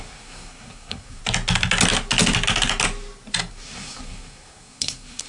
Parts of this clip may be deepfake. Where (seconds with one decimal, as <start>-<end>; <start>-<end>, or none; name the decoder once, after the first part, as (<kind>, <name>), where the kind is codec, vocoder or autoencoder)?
0.0-1.2 (codec, SNAC); 3.5-5.3